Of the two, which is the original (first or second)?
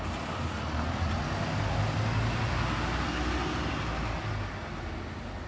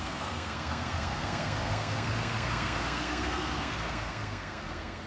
first